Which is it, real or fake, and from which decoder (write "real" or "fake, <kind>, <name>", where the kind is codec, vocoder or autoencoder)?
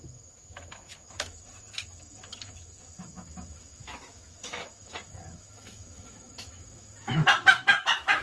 fake, autoencoder, DAC-VAE